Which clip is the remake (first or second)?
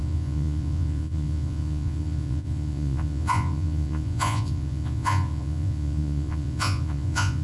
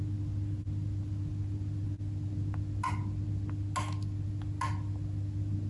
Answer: first